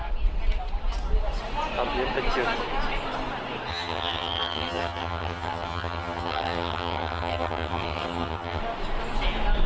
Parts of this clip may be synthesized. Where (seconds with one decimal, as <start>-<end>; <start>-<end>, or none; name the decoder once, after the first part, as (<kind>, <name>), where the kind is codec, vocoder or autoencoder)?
3.7-8.6 (vocoder, HiFi-GAN)